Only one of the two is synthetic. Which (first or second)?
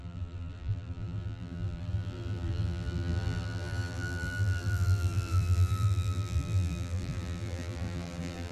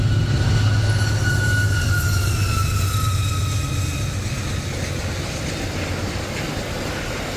first